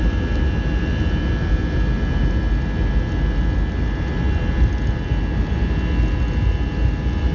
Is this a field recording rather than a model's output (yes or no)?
yes